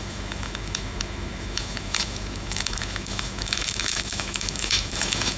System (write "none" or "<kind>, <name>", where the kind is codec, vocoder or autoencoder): autoencoder, DAC-VAE